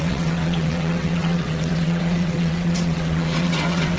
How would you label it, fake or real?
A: fake